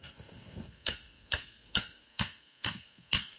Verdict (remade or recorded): remade